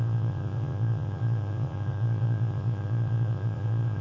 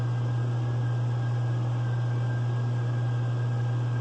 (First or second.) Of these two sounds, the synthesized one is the first